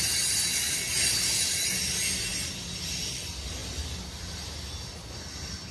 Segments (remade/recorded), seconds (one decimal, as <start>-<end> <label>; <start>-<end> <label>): 0.0-5.7 recorded